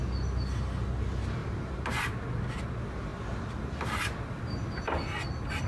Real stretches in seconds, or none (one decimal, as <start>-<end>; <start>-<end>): 0.0-5.7